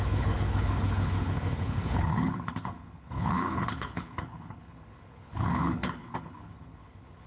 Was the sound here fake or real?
fake